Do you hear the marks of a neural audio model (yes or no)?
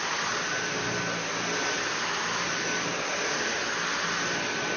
no